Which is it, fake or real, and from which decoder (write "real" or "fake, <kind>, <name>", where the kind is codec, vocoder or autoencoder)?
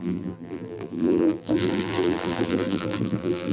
fake, vocoder, BigVGAN v2